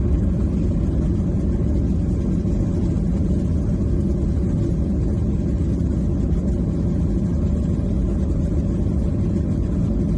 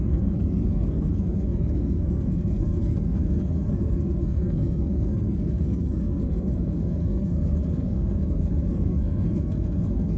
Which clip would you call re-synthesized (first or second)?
second